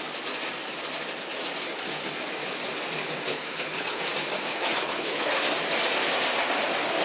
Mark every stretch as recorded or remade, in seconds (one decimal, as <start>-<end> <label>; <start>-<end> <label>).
0.0-3.3 recorded; 3.3-4.0 remade; 4.0-4.5 recorded; 4.5-5.4 remade; 5.4-7.0 recorded